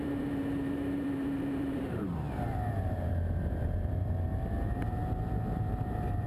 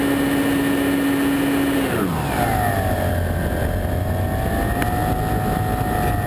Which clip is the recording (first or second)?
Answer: second